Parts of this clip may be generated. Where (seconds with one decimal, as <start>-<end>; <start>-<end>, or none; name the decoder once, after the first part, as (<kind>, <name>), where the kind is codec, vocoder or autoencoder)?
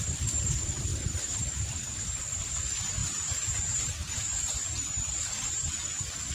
0.0-3.0 (vocoder, BigVGAN v2); 3.7-6.3